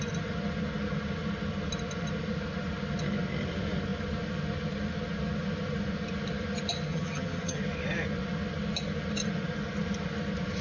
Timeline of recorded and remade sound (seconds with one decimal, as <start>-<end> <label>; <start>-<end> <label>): 0.0-6.9 recorded; 6.9-7.6 remade; 7.6-10.6 recorded